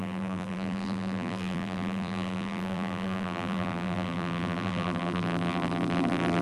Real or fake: fake